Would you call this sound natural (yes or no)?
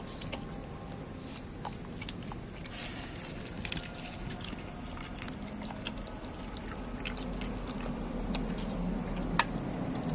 yes